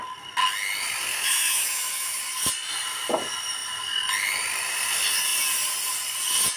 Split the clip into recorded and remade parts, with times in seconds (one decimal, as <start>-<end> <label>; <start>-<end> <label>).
0.0-1.1 recorded; 1.1-2.2 remade; 2.2-6.6 recorded

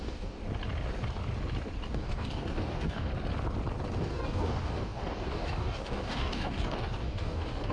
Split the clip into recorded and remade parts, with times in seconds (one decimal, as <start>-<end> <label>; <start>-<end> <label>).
0.0-0.4 remade; 0.4-1.9 recorded; 1.9-3.1 remade; 3.1-4.0 recorded; 4.0-7.7 remade

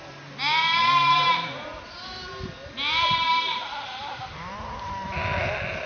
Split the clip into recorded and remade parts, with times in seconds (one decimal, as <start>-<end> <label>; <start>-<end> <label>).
0.0-0.8 recorded; 0.8-2.3 remade; 2.3-4.0 recorded; 4.0-4.9 remade; 4.9-5.9 recorded

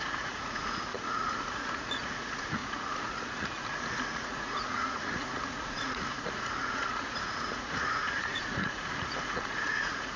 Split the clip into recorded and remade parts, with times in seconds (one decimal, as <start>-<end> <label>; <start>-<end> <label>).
0.0-10.2 remade